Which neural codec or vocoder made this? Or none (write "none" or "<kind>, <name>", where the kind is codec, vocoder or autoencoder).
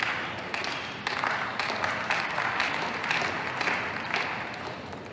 none